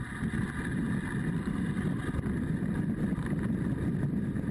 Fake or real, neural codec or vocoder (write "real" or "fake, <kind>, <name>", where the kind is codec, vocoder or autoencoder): real